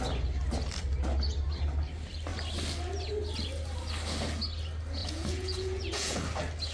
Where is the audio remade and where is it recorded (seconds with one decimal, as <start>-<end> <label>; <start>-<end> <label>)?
0.0-5.0 recorded; 5.0-6.2 remade; 6.2-6.7 recorded